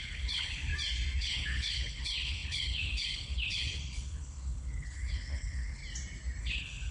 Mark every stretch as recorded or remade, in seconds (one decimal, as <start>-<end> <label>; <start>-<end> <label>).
0.0-0.7 remade; 0.7-1.2 recorded; 1.2-5.8 remade; 5.8-6.4 recorded; 6.4-6.9 remade